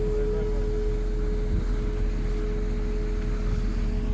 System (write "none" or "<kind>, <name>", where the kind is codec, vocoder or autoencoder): none